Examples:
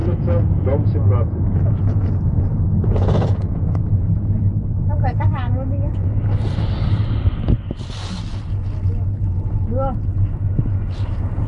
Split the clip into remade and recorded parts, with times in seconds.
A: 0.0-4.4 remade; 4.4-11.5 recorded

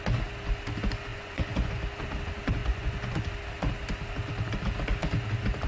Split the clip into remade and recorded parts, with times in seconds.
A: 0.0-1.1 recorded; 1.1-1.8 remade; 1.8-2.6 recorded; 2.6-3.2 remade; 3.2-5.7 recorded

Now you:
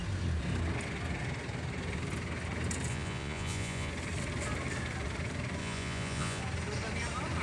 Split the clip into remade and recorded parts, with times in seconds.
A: 0.0-2.9 recorded; 2.9-3.9 remade; 3.9-5.6 recorded; 5.6-6.4 remade; 6.4-7.4 recorded

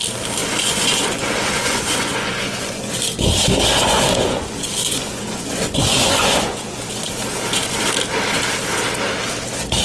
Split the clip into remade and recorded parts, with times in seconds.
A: 0.0-0.4 recorded; 0.4-2.9 remade; 2.9-3.7 recorded; 3.7-7.8 remade; 7.8-9.8 recorded

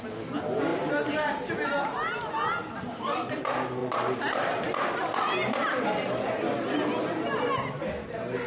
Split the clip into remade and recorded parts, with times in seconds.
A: 0.0-8.5 recorded